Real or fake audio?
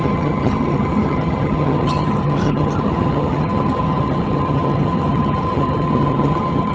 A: fake